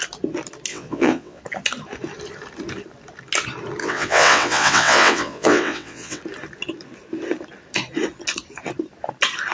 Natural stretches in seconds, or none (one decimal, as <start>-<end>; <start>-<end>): 0.0-0.7; 1.4-3.8; 6.2-9.5